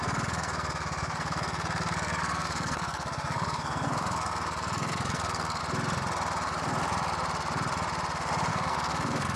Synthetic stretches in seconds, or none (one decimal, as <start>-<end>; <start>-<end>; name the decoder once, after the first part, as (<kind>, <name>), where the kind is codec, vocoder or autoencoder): 0.0-5.6 (codec, SNAC); 8.5-9.4